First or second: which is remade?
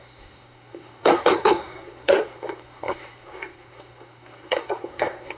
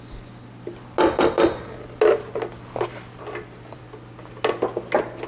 first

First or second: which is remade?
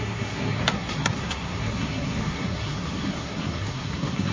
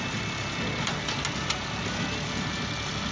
first